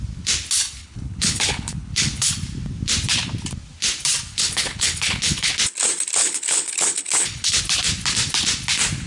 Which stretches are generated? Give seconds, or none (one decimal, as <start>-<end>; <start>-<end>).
0.8-2.3; 4.3-5.5; 6.2-7.6